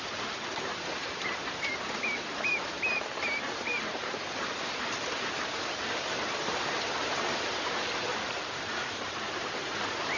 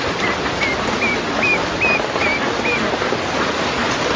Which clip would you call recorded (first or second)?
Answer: second